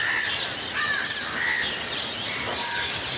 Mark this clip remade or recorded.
recorded